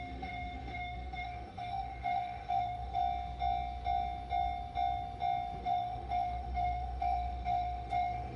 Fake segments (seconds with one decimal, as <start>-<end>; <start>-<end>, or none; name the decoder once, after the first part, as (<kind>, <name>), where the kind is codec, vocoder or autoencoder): 0.0-3.0 (autoencoder, DAC-VAE); 5.6-8.4

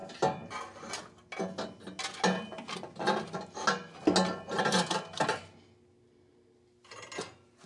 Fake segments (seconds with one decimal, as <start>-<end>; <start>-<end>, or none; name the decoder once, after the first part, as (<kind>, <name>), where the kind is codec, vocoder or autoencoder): none

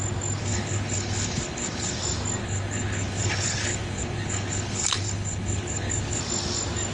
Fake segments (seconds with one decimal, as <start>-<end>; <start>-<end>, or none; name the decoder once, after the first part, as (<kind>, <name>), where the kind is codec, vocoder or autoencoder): 0.4-2.0 (codec, HILCodec); 2.4-6.2

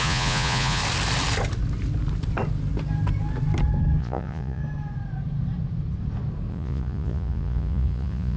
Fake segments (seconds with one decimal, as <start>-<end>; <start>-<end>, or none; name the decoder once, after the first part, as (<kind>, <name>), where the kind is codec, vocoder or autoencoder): 0.0-0.8 (vocoder, Vocos); 4.0-4.6; 6.5-8.4

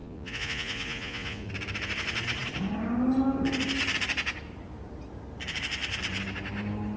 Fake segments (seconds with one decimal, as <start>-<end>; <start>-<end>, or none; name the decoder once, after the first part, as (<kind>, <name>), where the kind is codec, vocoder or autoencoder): 0.0-1.5 (vocoder, Vocos)

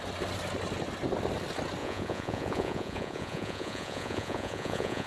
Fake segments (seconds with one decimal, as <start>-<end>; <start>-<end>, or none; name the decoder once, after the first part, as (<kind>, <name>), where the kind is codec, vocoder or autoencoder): 1.8-5.1 (vocoder, Vocos)

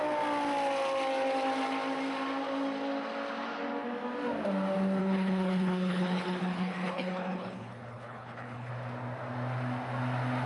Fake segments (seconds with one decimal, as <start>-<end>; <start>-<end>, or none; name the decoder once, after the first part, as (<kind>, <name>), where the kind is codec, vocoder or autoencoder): 5.0-8.7 (codec, HILCodec)